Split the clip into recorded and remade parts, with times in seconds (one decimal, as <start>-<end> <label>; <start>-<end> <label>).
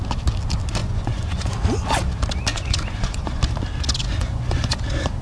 0.0-0.8 recorded; 0.8-1.5 remade; 1.5-2.5 recorded; 2.5-3.4 remade; 3.4-4.0 recorded; 4.0-4.8 remade; 4.8-5.2 recorded